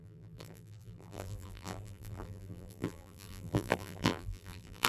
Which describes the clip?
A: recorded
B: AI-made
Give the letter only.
B